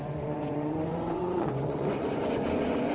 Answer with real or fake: fake